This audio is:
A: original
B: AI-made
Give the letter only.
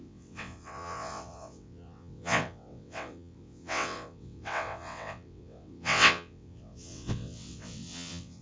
B